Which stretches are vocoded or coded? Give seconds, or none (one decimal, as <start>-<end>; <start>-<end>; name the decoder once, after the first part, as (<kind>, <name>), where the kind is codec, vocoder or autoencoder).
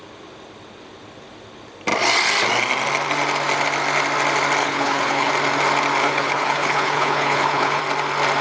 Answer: 4.6-5.3 (codec, HILCodec); 6.0-7.8